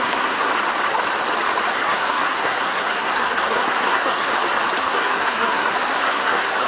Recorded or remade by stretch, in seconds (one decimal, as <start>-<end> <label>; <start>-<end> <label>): 0.0-0.5 remade; 0.5-1.7 recorded; 1.7-4.3 remade; 4.3-4.8 recorded; 4.8-6.7 remade